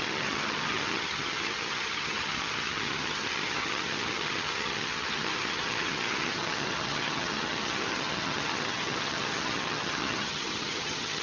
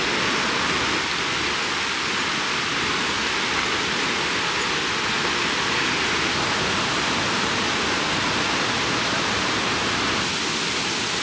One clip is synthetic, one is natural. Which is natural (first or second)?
second